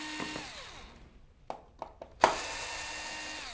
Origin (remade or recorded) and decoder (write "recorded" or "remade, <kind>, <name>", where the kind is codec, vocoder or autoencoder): recorded